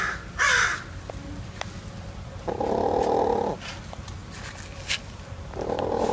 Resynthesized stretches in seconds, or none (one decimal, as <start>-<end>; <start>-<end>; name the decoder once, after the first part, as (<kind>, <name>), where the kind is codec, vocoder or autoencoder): none